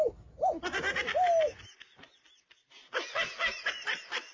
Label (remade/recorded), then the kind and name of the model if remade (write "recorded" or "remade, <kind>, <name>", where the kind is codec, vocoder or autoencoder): recorded